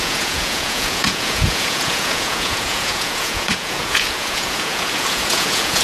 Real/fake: fake